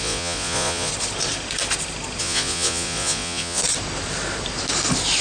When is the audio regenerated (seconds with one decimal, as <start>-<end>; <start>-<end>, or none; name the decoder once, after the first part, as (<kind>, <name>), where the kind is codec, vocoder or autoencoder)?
0.0-0.9 (vocoder, Vocos); 2.2-3.6